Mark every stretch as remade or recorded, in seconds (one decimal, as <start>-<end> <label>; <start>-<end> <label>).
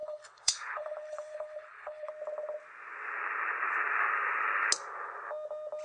0.0-2.1 remade; 2.1-5.8 recorded